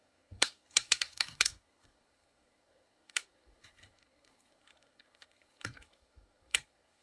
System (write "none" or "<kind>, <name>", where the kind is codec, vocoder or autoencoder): codec, SNAC